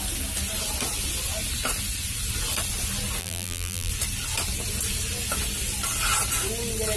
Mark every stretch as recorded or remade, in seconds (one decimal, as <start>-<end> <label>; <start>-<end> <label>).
0.0-3.2 recorded; 3.2-3.9 remade; 3.9-7.0 recorded